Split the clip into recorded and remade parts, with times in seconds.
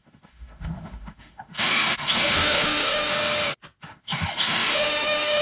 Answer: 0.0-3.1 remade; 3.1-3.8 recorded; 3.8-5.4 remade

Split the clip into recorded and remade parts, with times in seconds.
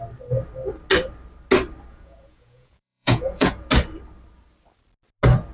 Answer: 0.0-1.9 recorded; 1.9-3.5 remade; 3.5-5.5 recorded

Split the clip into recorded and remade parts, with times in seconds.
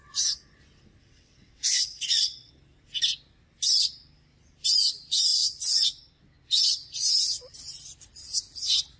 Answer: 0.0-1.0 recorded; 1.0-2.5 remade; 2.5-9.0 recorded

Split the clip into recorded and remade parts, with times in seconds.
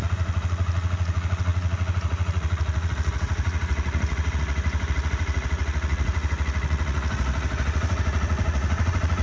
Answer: 0.0-9.2 remade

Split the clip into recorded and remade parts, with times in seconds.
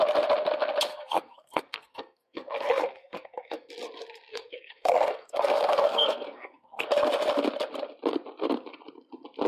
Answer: 0.0-0.9 recorded; 0.9-3.7 remade; 3.7-4.3 recorded; 4.3-6.9 remade; 6.9-9.5 recorded